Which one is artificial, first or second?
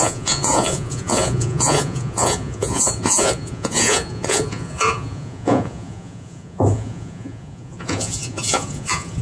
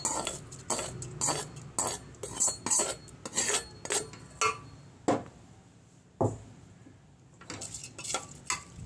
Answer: first